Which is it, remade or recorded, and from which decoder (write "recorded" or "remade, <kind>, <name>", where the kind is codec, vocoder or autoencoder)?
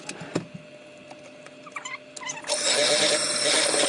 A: recorded